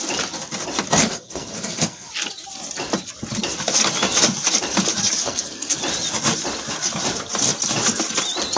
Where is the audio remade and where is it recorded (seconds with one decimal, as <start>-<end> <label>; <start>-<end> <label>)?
0.0-1.0 recorded; 1.0-2.1 remade; 2.1-5.2 recorded; 5.2-5.8 remade; 5.8-8.6 recorded